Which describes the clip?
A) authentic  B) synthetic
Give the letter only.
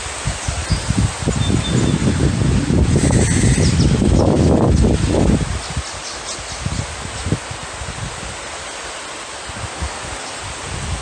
A